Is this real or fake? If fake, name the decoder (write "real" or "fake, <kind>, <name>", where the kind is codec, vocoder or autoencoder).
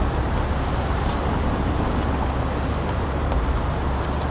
fake, vocoder, BigVGAN v2